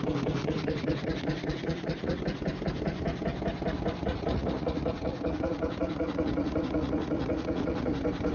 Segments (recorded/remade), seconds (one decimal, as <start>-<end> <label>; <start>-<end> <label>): 0.0-0.4 recorded; 0.4-2.2 remade; 2.2-4.0 recorded; 4.0-7.9 remade; 7.9-8.3 recorded